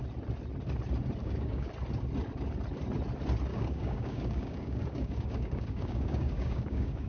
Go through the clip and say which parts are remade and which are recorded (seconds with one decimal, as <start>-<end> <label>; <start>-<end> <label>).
0.0-1.2 recorded; 1.2-1.7 remade; 1.7-3.5 recorded; 3.5-7.1 remade